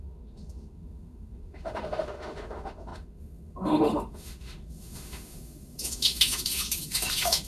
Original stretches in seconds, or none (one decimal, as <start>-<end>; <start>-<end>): none